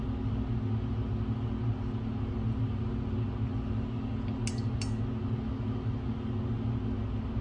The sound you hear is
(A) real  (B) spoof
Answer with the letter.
A